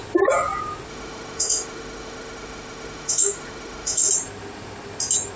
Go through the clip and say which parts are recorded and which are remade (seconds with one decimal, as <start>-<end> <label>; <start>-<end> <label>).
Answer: 0.0-0.9 recorded; 0.9-4.1 remade; 4.1-5.4 recorded